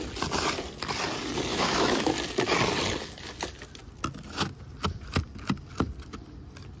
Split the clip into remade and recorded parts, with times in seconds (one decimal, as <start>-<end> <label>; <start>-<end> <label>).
0.0-1.5 recorded; 1.5-2.1 remade; 2.1-6.8 recorded